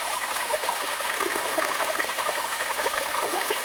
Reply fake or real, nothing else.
fake